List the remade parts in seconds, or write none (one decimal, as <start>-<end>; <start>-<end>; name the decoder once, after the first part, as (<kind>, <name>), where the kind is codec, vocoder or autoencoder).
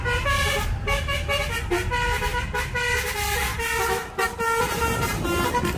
none